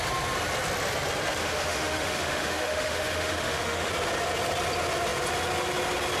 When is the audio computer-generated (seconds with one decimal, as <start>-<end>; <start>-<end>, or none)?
1.4-3.9

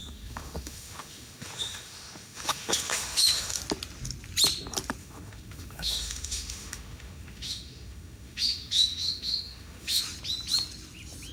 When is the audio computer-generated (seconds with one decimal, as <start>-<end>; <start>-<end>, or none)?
0.0-3.6; 5.0-10.0

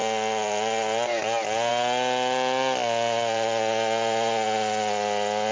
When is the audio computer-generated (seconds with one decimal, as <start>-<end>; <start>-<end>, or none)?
none

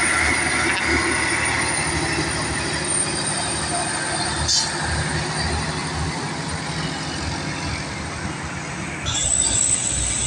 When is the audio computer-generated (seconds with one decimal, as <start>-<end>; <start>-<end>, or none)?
5.8-6.7

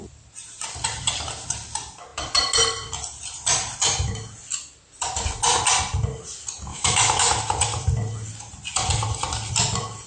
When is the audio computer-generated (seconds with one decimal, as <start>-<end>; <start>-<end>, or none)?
6.7-7.4